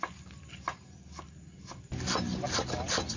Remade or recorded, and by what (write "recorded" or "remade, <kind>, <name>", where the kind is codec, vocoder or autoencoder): recorded